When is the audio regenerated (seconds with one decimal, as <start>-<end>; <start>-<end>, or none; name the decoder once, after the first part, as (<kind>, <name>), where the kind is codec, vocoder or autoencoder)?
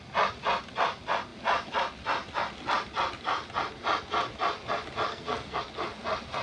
5.1-5.6 (codec, SNAC)